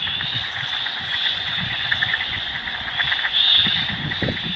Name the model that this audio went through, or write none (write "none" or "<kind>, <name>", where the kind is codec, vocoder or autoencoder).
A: vocoder, Vocos